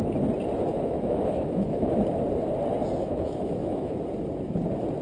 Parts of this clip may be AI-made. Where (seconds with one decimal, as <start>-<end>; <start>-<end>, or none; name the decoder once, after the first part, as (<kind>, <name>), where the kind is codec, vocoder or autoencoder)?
0.7-1.9 (autoencoder, DAC-VAE); 3.0-4.0

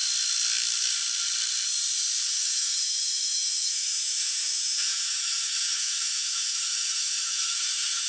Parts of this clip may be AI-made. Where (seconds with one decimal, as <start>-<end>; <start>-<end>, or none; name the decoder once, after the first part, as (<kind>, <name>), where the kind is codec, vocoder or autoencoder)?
2.3-8.1 (autoencoder, DAC-VAE)

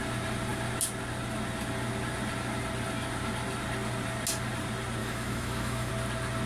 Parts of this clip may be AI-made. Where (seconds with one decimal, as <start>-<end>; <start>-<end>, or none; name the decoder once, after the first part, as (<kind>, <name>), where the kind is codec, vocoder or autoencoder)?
5.0-5.9 (autoencoder, DAC-VAE)

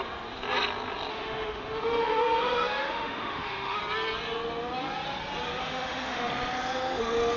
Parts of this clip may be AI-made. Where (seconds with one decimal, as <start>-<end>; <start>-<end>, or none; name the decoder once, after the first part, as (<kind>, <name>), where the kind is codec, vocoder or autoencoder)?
1.1-3.8 (autoencoder, DAC-VAE); 5.6-6.3

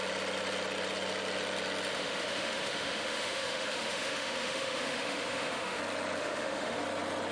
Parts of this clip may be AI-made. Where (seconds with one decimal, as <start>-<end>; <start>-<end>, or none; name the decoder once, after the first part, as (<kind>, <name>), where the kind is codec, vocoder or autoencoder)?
1.9-5.8 (autoencoder, DAC-VAE); 6.2-6.8